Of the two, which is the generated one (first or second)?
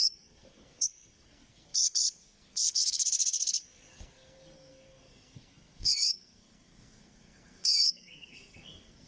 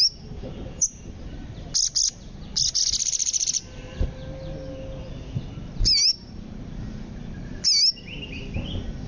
first